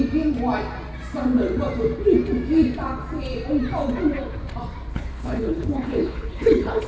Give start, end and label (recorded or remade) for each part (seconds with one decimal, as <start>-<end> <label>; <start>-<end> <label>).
0.0-4.9 recorded; 4.9-6.9 remade